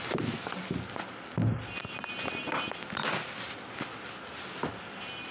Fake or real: real